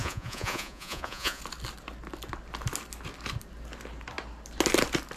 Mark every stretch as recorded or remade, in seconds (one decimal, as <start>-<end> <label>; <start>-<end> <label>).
0.0-1.4 remade; 1.4-5.2 recorded